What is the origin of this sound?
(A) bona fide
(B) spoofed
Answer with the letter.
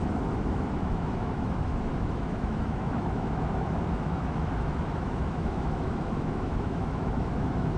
B